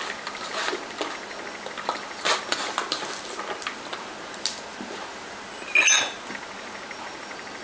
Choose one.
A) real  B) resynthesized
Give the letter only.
A